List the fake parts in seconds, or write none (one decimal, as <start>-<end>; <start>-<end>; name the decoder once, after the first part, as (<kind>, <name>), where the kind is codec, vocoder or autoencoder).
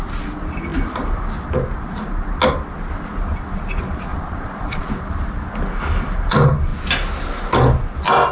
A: 4.1-4.8 (vocoder, Vocos)